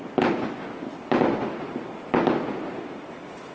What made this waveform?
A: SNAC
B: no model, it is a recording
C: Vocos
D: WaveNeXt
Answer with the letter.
B